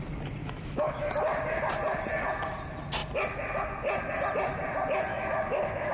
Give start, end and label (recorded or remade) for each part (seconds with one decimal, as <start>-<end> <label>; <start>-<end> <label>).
0.0-0.4 recorded; 0.4-1.1 remade; 1.1-5.1 recorded; 5.1-5.9 remade